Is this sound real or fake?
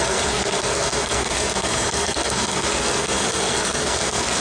fake